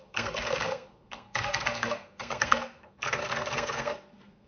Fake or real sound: fake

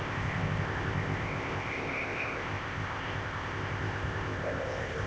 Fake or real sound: fake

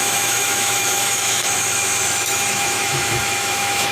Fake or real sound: fake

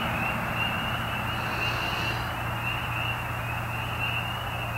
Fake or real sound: real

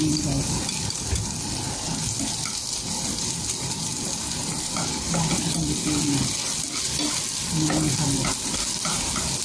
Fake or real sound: real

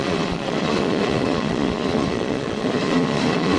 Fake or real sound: fake